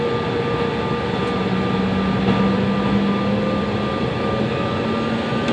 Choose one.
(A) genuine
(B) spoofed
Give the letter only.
A